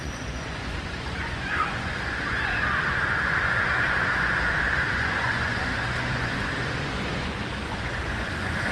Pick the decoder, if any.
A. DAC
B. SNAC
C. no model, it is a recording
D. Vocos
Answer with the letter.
D